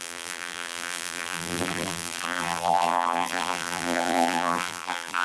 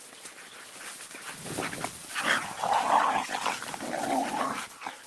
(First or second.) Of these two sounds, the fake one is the first